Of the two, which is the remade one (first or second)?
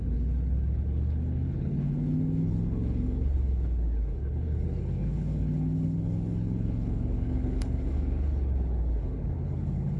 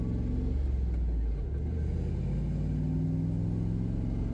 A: first